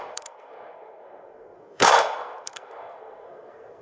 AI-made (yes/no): yes